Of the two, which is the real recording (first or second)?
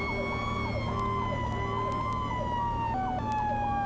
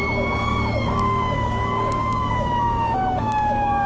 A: first